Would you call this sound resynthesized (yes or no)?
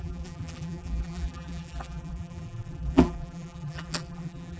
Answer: yes